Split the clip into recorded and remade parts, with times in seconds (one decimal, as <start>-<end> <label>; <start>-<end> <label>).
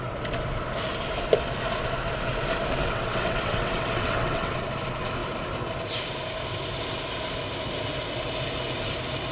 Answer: 0.0-2.8 recorded; 2.8-4.5 remade; 4.5-9.3 recorded